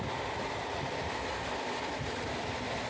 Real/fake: real